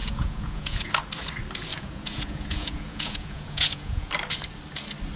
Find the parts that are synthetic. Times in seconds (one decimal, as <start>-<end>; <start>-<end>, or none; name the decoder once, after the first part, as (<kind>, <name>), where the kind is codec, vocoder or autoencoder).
0.0-0.9 (vocoder, Vocos); 1.7-4.1